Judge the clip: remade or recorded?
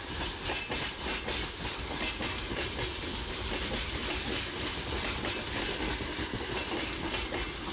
recorded